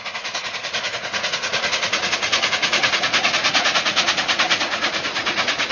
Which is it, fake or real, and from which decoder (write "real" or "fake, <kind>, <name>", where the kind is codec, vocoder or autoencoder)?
fake, vocoder, Vocos